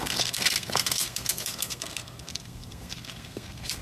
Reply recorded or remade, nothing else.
remade